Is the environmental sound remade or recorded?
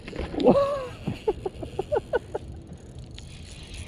recorded